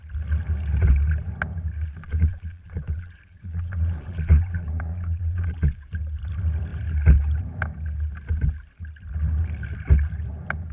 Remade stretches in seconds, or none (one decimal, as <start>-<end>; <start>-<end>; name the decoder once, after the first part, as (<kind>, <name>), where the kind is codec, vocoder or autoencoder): 2.0-5.9 (vocoder, Vocos)